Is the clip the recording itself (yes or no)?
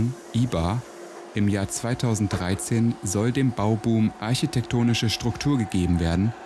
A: yes